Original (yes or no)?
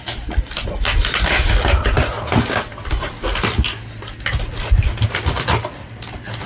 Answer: yes